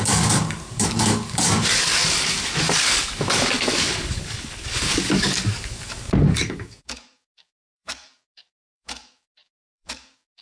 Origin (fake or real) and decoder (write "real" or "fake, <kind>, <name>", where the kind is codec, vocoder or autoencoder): fake, codec, DAC